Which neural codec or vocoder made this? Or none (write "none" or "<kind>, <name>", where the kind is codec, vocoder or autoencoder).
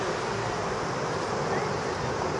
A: none